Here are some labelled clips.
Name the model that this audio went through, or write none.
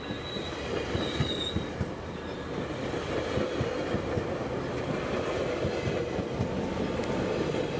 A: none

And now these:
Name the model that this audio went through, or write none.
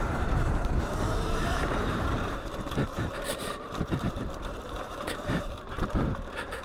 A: vocoder, BigVGAN v2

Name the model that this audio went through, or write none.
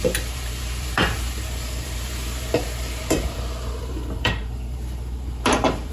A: vocoder, BigVGAN v2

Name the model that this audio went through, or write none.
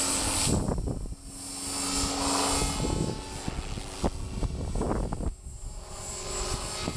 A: none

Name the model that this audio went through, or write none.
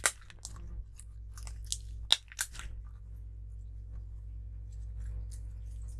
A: none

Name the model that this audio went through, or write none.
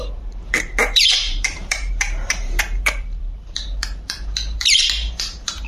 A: vocoder, BigVGAN v2